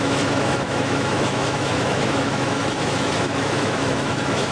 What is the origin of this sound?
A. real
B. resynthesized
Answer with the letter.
B